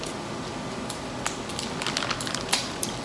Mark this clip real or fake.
real